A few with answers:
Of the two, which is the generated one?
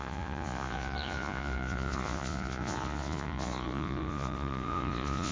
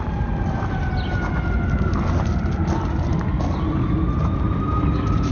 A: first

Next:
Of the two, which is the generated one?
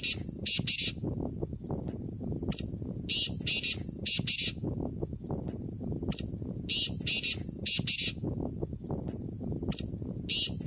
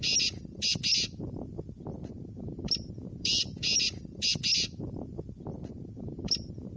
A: second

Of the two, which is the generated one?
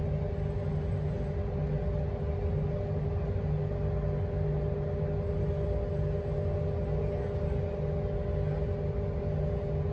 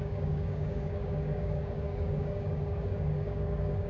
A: second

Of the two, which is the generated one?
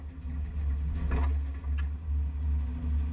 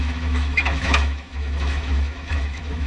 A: second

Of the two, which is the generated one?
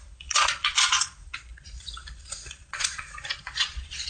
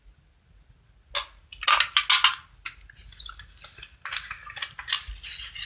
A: first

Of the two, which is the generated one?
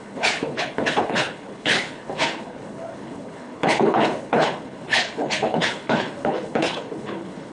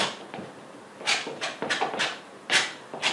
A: first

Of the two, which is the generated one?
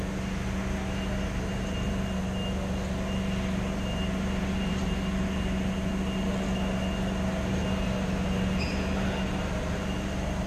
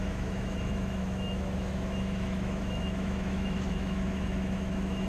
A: second